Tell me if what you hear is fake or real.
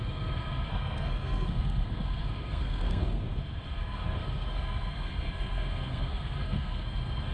fake